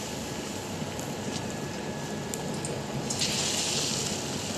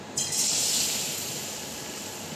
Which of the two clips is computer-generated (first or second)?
second